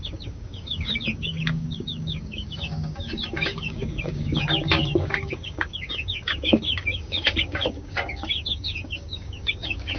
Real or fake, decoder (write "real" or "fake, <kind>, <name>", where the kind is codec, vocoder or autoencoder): fake, codec, DAC